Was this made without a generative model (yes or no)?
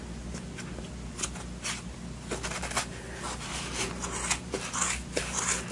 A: yes